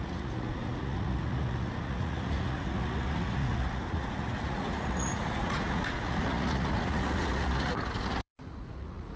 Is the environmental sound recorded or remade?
remade